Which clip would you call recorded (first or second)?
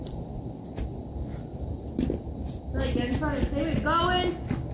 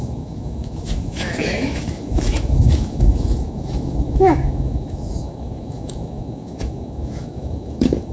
first